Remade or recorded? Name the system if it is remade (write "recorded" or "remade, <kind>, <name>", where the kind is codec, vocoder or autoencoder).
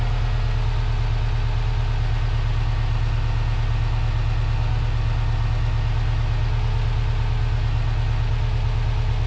recorded